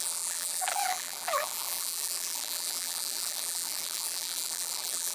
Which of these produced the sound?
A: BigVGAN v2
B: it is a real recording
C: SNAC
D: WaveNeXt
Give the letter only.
A